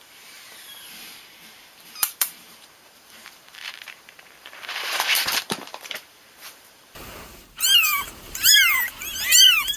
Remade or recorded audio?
remade